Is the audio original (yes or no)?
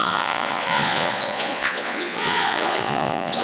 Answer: no